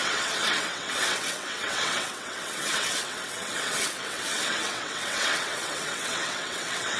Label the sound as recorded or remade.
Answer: remade